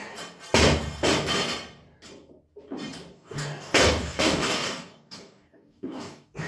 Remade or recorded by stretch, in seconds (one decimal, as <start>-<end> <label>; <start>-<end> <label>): 0.0-3.1 recorded; 3.1-6.5 remade

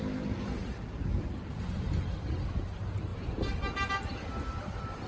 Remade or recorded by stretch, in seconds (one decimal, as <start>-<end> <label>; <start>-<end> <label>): 0.0-0.6 recorded; 0.6-1.6 remade; 1.6-5.1 recorded

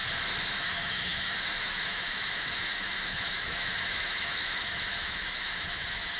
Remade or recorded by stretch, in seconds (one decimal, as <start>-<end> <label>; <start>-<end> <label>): 0.0-0.6 recorded; 0.6-6.2 remade

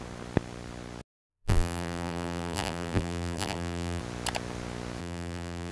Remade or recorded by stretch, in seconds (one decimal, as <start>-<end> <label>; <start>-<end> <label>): 0.0-1.3 recorded; 1.3-4.0 remade; 4.0-5.0 recorded; 5.0-5.7 remade

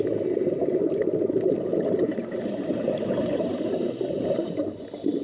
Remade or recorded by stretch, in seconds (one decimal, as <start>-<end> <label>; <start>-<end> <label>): 0.0-1.7 recorded; 1.7-4.8 remade; 4.8-5.2 recorded

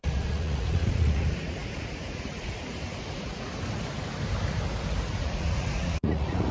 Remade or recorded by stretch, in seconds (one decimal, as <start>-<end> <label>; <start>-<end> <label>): 0.0-3.5 remade; 3.5-5.1 recorded; 5.1-6.5 remade

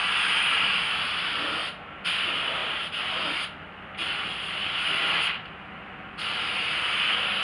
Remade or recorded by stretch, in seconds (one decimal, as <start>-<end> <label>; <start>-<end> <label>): 0.0-7.4 recorded